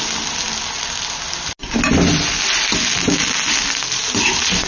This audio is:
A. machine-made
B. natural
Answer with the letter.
B